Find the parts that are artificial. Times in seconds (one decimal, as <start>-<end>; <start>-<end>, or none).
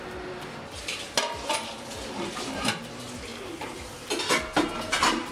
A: none